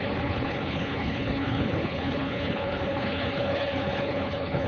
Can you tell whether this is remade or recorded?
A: remade